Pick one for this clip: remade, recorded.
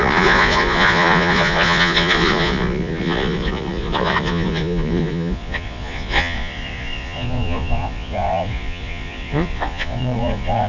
remade